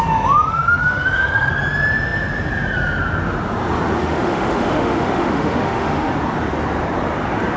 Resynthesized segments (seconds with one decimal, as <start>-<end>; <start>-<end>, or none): 0.5-1.5; 4.0-6.1